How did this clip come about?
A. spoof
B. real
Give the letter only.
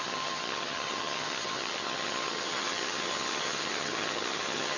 A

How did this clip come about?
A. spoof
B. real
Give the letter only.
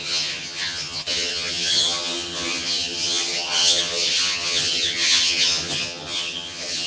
A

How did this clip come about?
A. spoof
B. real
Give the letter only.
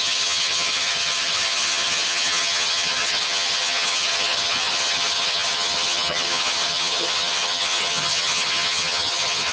A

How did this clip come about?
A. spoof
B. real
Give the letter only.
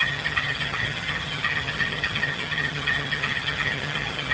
A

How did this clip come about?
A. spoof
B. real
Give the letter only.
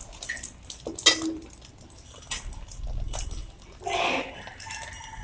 B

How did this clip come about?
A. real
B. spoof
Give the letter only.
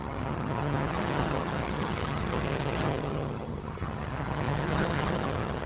B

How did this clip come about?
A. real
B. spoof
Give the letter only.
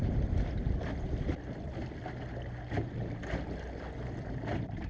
A